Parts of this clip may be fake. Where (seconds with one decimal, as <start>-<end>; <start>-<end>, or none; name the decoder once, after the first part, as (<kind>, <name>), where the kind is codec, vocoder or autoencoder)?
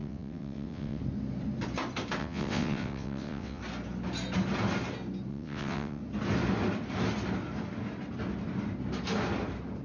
0.0-1.0 (vocoder, WaveNeXt); 2.2-3.6; 5.3-6.0